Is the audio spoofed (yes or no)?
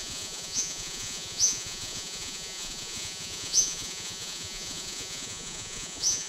yes